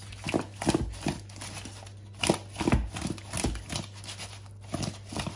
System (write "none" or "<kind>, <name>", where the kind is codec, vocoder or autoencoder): none